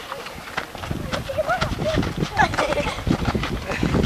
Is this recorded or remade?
recorded